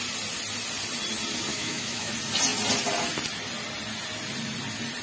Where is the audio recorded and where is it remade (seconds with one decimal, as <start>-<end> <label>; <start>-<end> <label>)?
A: 0.0-1.5 recorded; 1.5-2.1 remade; 2.1-5.0 recorded